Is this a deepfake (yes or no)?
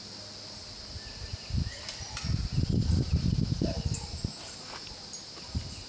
no